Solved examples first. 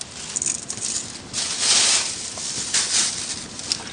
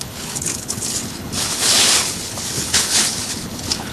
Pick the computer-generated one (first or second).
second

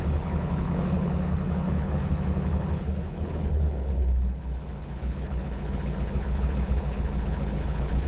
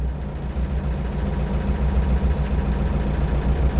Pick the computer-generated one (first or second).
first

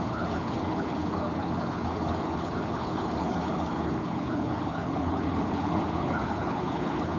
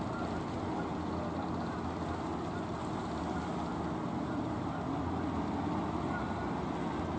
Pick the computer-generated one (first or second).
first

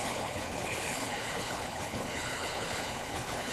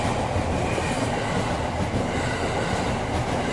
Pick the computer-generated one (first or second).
first